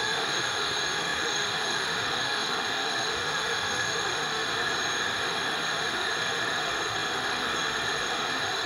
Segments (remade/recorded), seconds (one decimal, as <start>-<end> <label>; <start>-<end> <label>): 0.0-4.5 remade; 4.5-5.0 recorded; 5.0-8.7 remade